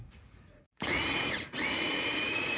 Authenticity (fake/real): fake